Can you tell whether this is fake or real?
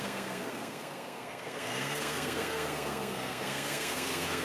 fake